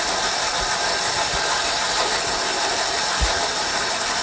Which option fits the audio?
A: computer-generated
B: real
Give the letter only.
B